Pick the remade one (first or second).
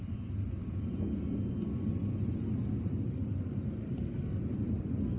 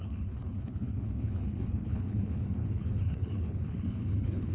second